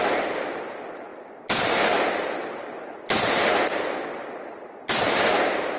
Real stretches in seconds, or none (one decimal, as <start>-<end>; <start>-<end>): 0.0-5.8